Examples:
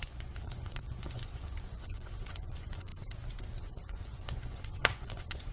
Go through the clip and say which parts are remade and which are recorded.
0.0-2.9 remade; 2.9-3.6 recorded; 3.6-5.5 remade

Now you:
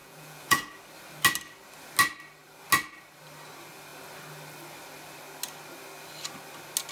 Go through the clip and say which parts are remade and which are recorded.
0.0-0.7 remade; 0.7-6.9 recorded

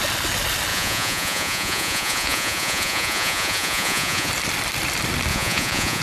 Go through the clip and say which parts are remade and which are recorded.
0.0-0.7 recorded; 0.7-4.3 remade; 4.3-5.3 recorded; 5.3-6.0 remade